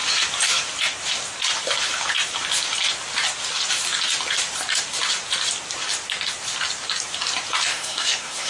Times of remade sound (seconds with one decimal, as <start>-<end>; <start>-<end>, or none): 7.7-8.5